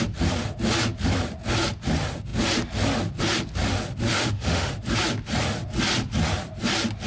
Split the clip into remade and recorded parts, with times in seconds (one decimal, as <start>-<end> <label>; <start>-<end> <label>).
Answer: 0.0-4.1 recorded; 4.1-4.7 remade; 4.7-7.1 recorded